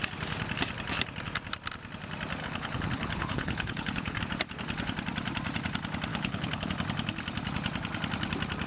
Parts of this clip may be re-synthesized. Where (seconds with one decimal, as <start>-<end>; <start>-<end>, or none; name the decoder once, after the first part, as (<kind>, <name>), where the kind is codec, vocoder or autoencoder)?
2.4-4.2 (codec, HILCodec); 6.1-6.7